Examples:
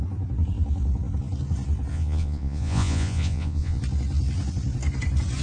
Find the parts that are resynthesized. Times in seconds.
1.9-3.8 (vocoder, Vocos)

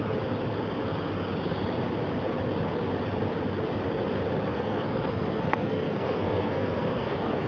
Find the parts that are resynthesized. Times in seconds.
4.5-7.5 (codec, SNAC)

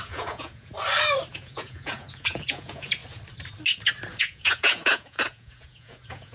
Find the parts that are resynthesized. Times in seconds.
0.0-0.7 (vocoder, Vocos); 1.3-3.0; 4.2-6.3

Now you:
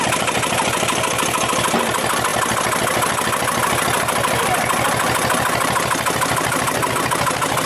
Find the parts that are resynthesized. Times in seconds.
none